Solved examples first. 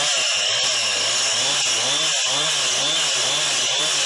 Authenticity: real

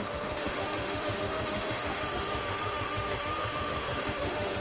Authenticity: fake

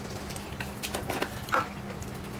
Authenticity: real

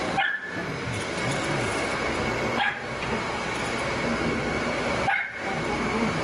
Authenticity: real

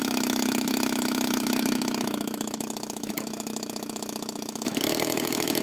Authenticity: fake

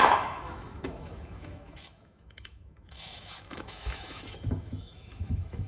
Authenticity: fake